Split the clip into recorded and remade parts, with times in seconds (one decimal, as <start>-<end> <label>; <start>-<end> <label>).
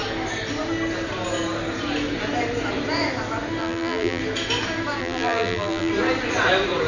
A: 0.0-3.6 recorded; 3.6-4.2 remade; 4.2-5.0 recorded; 5.0-5.9 remade; 5.9-6.9 recorded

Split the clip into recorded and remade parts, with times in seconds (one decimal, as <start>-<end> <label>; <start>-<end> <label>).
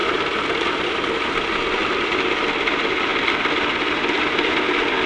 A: 0.0-5.1 recorded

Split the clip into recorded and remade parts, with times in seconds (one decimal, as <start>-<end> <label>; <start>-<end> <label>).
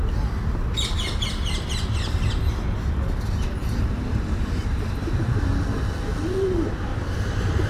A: 0.0-3.6 recorded; 3.6-5.5 remade; 5.5-6.9 recorded; 6.9-7.7 remade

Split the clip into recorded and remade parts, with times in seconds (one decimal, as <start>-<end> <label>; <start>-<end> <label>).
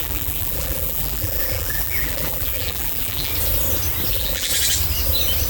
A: 0.0-3.3 remade; 3.3-4.1 recorded; 4.1-4.5 remade; 4.5-5.5 recorded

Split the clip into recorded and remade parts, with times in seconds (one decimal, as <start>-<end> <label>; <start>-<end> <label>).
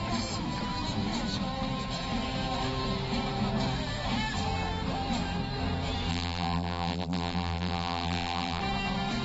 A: 0.0-6.1 recorded; 6.1-8.6 remade; 8.6-9.2 recorded